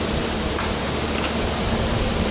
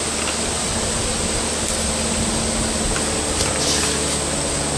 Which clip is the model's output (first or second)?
first